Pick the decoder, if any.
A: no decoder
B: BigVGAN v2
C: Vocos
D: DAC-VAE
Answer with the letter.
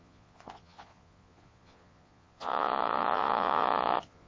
C